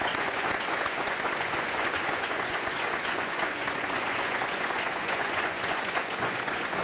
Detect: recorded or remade remade